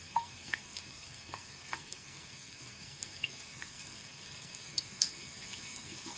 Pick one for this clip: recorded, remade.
remade